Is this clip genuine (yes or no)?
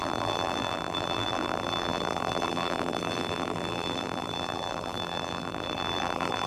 no